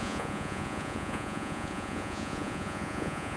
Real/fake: fake